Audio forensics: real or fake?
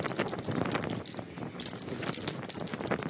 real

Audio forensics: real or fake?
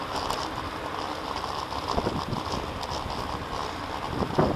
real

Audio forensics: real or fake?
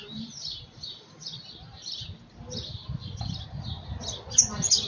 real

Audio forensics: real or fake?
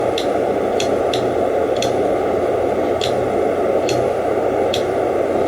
real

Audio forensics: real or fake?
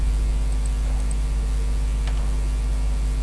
real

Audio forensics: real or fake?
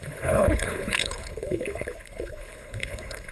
fake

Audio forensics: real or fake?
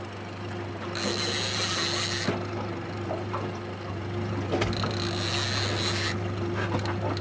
real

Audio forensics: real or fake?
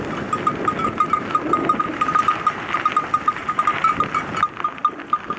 real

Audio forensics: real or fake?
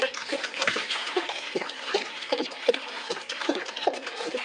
fake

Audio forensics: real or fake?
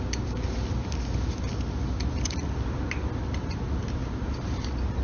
real